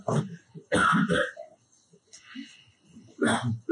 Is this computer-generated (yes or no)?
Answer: no